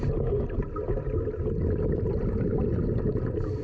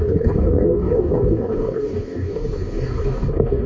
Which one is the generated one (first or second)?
second